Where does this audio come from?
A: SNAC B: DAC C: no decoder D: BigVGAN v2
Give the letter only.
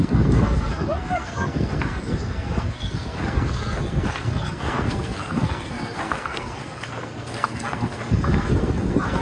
A